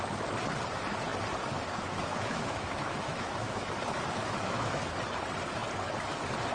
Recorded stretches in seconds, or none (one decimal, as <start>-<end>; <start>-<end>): 0.0-2.1; 3.8-4.2; 4.8-6.5